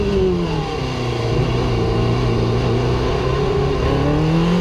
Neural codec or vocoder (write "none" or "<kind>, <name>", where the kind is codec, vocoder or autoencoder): none